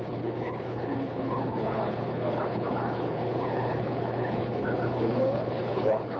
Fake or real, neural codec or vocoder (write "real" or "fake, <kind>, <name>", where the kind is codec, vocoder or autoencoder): fake, codec, HILCodec